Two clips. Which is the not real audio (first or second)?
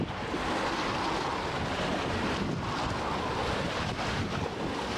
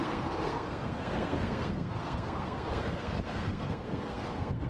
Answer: second